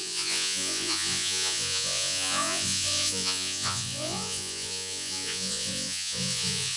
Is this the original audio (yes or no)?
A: no